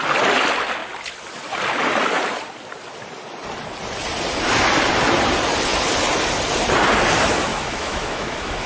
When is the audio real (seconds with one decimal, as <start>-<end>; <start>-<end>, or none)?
0.0-7.5